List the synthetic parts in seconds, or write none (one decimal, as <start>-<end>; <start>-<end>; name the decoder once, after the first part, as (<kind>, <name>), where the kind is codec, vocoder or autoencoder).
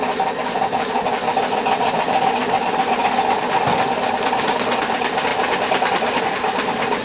5.3-6.2 (vocoder, BigVGAN v2)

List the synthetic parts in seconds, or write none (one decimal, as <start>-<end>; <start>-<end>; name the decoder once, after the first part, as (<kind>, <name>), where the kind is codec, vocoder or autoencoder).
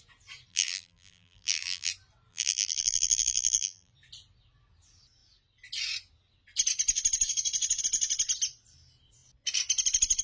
0.5-1.9 (vocoder, BigVGAN v2); 2.3-3.9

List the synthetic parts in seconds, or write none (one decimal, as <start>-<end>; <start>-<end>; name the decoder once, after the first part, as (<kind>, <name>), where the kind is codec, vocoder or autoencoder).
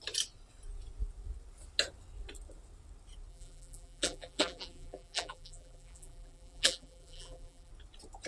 3.3-7.7 (vocoder, BigVGAN v2)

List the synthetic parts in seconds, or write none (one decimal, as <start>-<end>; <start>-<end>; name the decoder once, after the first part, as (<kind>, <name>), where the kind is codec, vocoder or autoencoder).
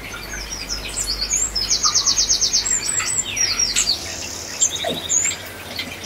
none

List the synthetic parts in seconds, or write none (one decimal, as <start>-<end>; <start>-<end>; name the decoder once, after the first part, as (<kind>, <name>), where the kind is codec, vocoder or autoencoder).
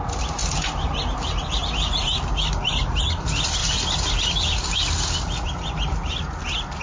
0.0-0.4 (vocoder, BigVGAN v2); 2.6-3.6